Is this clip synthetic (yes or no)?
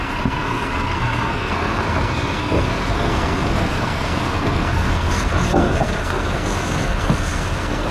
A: yes